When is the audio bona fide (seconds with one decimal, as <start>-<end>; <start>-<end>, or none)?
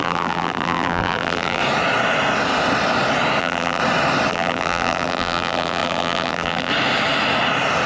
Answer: 1.6-3.4; 3.8-4.3; 6.7-7.9